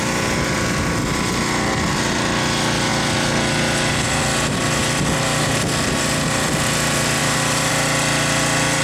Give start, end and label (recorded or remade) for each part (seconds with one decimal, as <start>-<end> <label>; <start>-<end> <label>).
0.0-7.2 recorded; 7.2-7.7 remade; 7.7-8.8 recorded